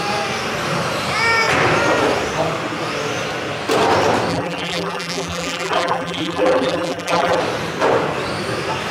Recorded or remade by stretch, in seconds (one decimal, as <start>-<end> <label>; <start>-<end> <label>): 0.0-4.3 recorded; 4.3-7.4 remade; 7.4-8.9 recorded

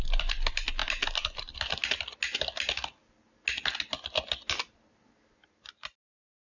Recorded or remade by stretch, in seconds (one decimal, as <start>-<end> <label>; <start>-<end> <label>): 0.0-6.6 recorded

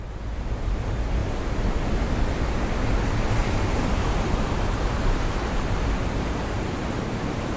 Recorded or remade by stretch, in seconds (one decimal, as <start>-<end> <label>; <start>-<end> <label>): 0.0-1.2 recorded; 1.2-2.7 remade; 2.7-3.4 recorded; 3.4-7.6 remade

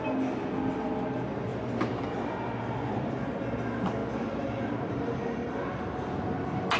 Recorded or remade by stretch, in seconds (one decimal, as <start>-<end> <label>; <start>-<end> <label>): 0.0-1.5 recorded; 1.5-2.0 remade; 2.0-4.0 recorded; 4.0-5.2 remade; 5.2-6.8 recorded

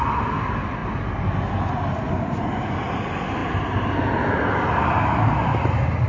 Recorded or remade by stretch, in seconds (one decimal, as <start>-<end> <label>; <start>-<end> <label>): 0.0-6.1 recorded

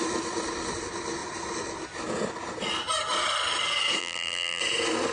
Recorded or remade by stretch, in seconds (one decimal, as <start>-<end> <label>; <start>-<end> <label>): 0.0-4.0 recorded; 4.0-4.6 remade; 4.6-5.1 recorded

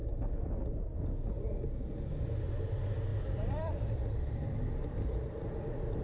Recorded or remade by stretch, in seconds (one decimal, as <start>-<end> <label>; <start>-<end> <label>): 0.0-3.1 recorded; 3.1-4.2 remade; 4.2-6.0 recorded